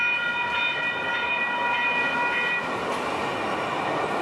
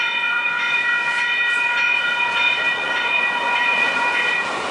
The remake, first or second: second